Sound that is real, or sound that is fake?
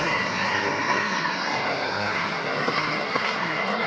fake